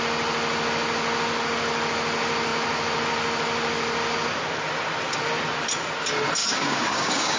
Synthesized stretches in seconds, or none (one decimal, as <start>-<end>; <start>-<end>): 6.4-7.4

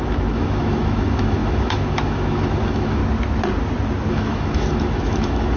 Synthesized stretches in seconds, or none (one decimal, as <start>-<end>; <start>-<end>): 0.0-3.0; 4.1-5.6